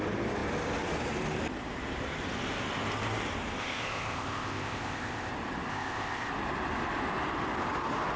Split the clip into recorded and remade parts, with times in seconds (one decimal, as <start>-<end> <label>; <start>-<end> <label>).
0.0-3.6 recorded; 3.6-5.3 remade; 5.3-5.7 recorded; 5.7-6.3 remade; 6.3-8.2 recorded